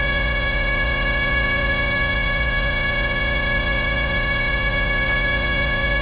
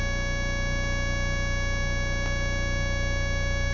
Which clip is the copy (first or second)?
first